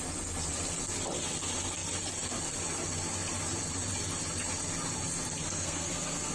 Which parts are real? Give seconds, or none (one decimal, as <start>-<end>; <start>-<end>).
0.0-5.4